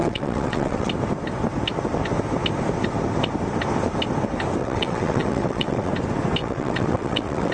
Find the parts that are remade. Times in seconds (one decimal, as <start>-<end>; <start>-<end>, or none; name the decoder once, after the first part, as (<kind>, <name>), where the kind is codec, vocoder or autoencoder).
0.0-0.9 (vocoder, WaveNeXt); 4.6-5.9; 6.4-7.5